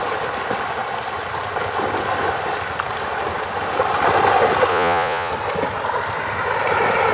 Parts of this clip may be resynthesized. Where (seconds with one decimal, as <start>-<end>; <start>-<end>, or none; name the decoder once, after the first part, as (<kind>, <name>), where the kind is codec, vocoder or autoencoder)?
4.7-5.3 (vocoder, Vocos)